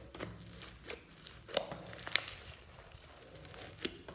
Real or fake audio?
real